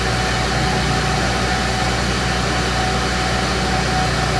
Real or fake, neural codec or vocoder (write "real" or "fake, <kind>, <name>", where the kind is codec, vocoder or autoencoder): real